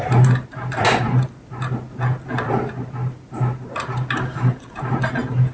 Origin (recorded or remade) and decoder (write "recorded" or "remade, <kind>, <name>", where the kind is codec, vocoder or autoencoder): recorded